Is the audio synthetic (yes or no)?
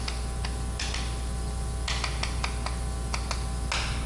no